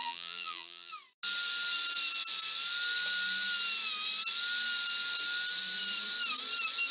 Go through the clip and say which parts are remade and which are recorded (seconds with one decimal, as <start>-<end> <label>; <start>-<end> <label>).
0.0-0.9 remade; 0.9-6.9 recorded